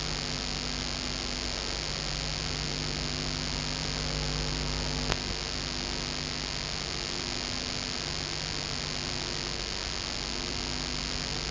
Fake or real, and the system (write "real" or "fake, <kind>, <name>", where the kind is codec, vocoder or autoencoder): real